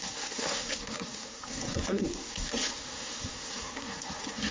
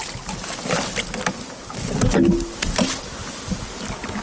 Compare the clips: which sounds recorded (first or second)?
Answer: second